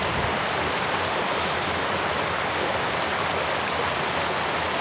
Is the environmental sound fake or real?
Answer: fake